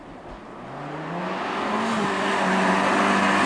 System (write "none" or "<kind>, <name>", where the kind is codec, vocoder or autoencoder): none